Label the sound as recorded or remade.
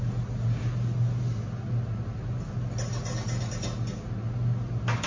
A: recorded